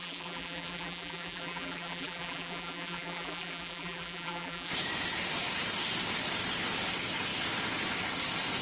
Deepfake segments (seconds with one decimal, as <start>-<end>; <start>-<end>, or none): 0.0-4.7